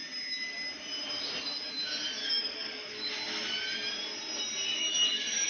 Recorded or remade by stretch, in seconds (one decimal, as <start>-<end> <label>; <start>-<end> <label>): 0.0-2.2 recorded; 2.2-3.1 remade; 3.1-4.7 recorded; 4.7-5.5 remade